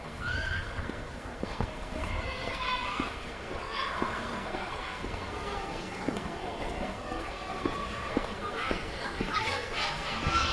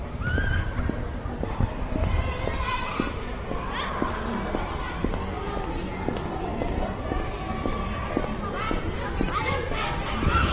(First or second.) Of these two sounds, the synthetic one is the first